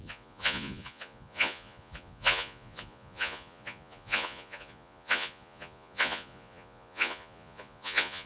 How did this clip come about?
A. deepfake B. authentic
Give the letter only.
A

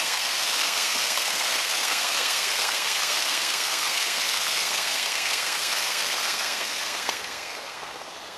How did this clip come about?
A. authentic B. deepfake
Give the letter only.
B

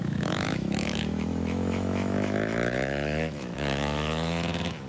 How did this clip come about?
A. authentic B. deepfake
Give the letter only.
B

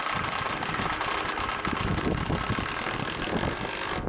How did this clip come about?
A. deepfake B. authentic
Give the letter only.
B